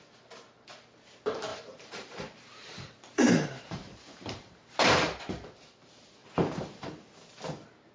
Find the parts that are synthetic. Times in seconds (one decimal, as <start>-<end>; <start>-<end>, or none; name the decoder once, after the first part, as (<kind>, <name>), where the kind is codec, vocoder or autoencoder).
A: 1.5-5.2 (vocoder, BigVGAN v2); 6.2-6.9

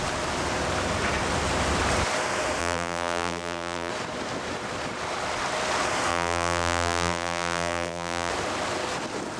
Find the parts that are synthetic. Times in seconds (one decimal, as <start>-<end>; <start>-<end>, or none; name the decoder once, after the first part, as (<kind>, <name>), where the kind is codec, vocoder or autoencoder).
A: 2.6-3.9 (vocoder, BigVGAN v2); 6.1-8.3

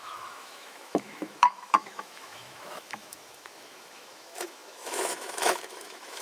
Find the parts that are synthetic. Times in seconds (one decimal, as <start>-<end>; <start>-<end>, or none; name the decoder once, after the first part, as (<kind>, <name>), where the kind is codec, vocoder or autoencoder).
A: 0.0-6.2 (autoencoder, DAC-VAE)

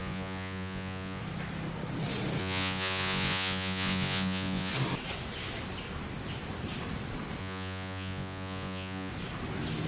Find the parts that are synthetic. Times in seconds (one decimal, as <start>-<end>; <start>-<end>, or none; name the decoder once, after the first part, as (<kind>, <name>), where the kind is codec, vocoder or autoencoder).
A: 0.0-1.2 (vocoder, Vocos); 2.4-4.7; 7.4-9.1

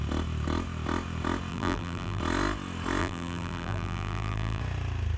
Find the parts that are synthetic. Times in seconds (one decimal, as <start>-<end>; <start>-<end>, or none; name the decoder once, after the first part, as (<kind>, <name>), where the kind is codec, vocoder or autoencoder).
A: 1.5-2.2 (vocoder, BigVGAN v2); 3.0-4.6

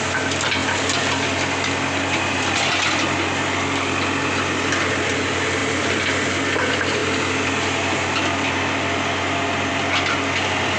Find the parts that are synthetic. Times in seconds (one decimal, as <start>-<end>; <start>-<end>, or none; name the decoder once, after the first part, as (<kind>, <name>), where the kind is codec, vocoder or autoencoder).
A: none

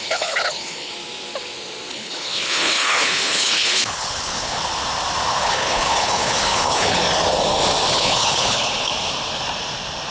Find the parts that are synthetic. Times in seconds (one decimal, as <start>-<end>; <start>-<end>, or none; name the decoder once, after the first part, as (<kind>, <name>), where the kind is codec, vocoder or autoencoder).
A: 0.0-0.9 (codec, HILCodec); 1.9-4.6; 5.4-7.0; 7.9-8.9